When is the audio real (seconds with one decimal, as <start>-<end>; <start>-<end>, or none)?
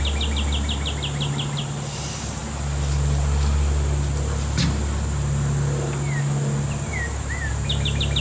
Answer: 0.0-8.2